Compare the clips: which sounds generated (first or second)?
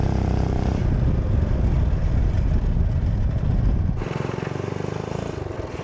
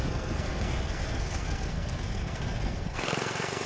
second